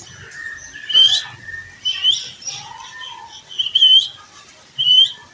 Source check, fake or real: real